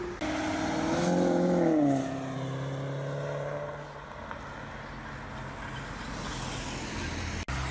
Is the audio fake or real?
real